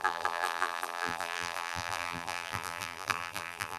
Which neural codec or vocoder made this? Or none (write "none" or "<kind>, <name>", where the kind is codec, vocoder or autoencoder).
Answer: vocoder, BigVGAN v2